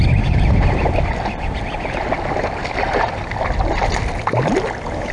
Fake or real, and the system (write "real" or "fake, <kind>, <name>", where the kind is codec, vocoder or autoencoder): real